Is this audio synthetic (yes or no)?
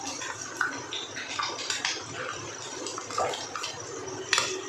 no